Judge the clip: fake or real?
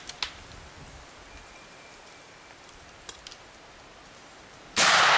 real